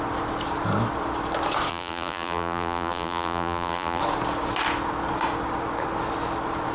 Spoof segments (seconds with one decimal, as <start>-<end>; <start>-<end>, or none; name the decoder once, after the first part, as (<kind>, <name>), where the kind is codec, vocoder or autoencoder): 1.7-4.0 (vocoder, BigVGAN v2)